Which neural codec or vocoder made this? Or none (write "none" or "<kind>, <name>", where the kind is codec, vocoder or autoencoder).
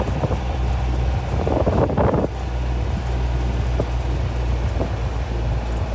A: none